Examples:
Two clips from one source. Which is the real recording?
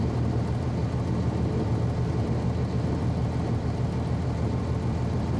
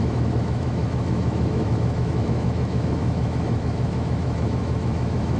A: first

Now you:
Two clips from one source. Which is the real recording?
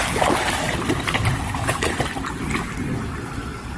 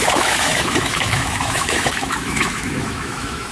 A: first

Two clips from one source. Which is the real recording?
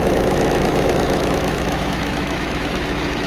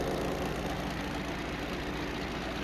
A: second